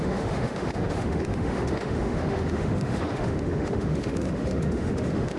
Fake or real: fake